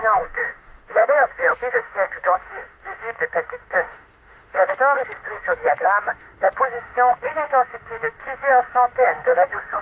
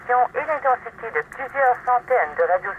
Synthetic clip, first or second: first